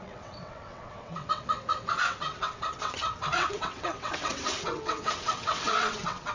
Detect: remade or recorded remade